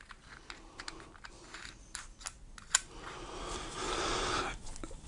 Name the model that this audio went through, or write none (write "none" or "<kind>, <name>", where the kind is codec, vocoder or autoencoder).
none